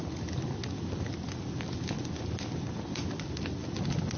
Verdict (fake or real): real